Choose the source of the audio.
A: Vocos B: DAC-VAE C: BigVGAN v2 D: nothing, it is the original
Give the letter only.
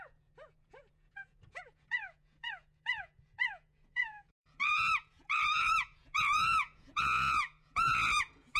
A